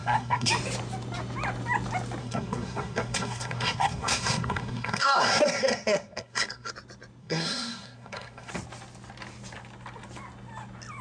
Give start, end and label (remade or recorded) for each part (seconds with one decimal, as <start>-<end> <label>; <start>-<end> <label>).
0.0-0.5 remade; 0.5-2.2 recorded; 2.2-6.7 remade; 6.7-7.2 recorded; 7.2-8.5 remade; 8.5-11.0 recorded